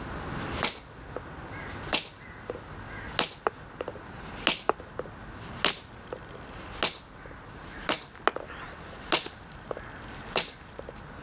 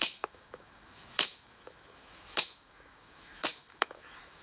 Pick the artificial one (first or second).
second